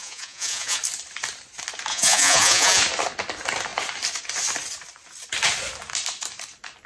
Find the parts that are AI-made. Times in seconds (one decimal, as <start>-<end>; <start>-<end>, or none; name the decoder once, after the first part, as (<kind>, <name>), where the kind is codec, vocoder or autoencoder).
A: 0.0-0.8 (vocoder, Vocos); 1.9-2.8